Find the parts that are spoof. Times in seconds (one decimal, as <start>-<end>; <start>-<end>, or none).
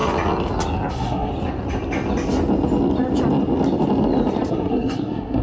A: 0.9-1.3; 4.5-5.4